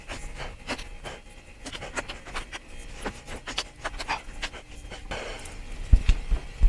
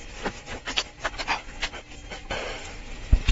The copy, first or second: second